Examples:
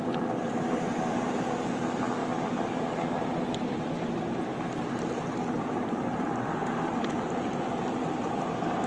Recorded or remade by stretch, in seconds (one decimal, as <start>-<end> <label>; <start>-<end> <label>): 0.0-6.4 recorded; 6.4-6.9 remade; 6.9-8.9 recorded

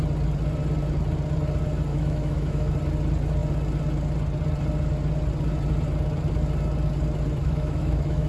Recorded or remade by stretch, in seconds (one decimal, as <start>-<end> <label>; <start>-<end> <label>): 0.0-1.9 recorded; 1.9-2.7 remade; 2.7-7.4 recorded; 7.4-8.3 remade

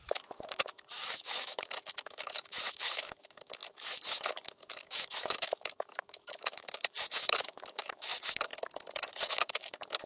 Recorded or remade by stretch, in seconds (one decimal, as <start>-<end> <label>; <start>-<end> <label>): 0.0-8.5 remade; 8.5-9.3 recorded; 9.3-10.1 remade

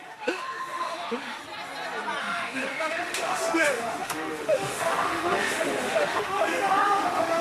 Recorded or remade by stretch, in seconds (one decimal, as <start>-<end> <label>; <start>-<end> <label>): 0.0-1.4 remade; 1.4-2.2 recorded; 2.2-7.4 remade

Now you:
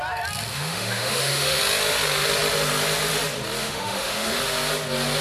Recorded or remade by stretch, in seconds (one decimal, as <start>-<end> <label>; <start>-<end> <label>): 0.0-0.5 recorded; 0.5-1.6 remade; 1.6-3.6 recorded; 3.6-4.4 remade; 4.4-5.2 recorded

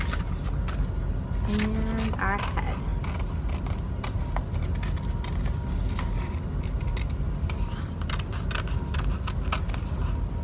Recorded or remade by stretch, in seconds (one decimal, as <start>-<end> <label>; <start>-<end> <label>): 0.0-10.4 recorded

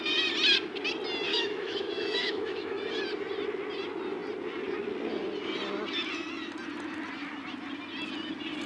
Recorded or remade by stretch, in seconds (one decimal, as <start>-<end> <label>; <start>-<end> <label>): 0.0-1.3 recorded; 1.3-2.8 remade; 2.8-8.7 recorded